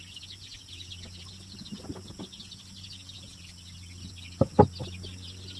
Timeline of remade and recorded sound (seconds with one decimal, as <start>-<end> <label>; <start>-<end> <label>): 0.0-5.6 recorded